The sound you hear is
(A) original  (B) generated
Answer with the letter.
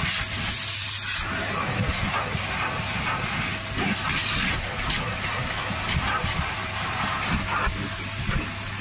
A